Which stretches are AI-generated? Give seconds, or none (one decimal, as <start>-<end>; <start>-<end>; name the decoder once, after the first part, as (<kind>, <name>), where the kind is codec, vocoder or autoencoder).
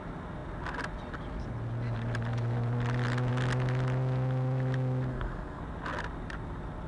5.1-5.6 (codec, SNAC)